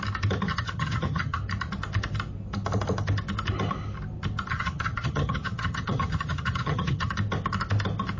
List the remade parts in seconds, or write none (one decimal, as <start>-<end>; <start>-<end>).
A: 0.5-1.4; 4.5-7.1